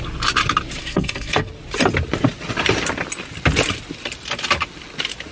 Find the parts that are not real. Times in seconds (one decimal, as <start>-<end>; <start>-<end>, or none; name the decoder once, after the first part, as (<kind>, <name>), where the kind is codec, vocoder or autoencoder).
0.8-1.5 (codec, SNAC)